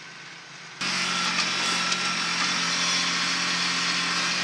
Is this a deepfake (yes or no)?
no